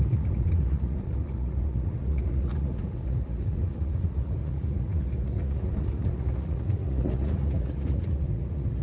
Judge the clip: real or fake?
fake